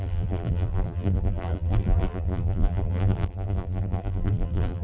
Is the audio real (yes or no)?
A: no